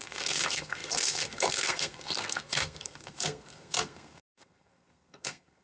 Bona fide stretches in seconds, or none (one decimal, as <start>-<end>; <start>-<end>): none